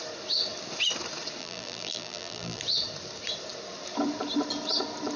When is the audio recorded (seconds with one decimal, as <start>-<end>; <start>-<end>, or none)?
0.0-1.4; 2.6-5.2